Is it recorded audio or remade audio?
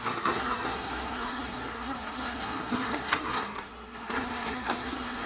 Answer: remade